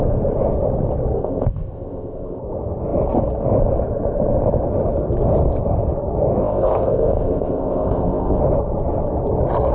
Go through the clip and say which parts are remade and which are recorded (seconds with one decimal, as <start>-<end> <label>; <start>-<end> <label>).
0.0-1.2 recorded; 1.2-2.4 remade; 2.4-6.4 recorded; 6.4-8.4 remade; 8.4-9.7 recorded